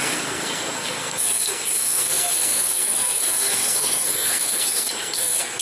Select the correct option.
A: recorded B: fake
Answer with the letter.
B